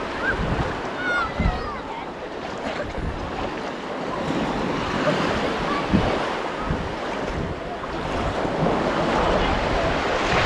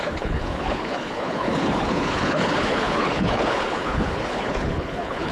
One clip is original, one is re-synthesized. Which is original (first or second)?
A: first